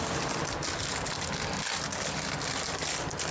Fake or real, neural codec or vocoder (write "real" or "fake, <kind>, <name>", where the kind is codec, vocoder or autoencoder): real